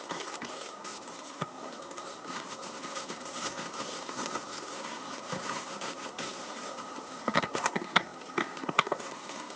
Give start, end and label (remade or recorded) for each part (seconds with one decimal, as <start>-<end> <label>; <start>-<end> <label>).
0.0-9.6 remade